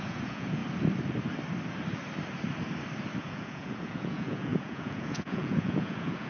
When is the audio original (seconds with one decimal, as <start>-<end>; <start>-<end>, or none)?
0.6-3.2